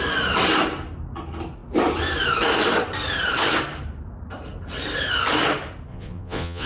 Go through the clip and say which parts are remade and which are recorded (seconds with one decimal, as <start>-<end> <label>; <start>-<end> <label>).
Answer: 0.0-5.9 recorded; 5.9-6.7 remade